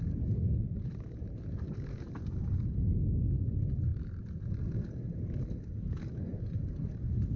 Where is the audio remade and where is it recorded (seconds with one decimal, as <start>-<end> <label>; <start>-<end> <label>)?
0.0-0.6 recorded; 0.6-2.7 remade; 2.7-3.9 recorded; 3.9-4.5 remade; 4.5-6.3 recorded; 6.3-7.4 remade